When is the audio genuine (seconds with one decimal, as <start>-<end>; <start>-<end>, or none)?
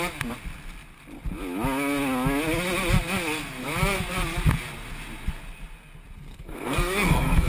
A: 0.0-6.3